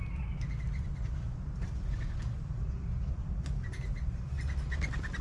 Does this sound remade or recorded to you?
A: recorded